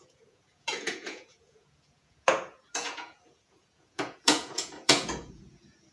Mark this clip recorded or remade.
remade